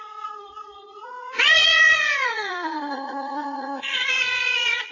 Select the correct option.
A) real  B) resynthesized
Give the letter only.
B